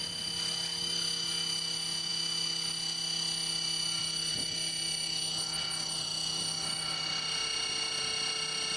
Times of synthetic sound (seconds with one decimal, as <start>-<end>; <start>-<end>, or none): none